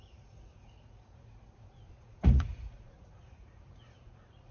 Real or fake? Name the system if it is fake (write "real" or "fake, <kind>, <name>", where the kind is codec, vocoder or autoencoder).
fake, vocoder, Vocos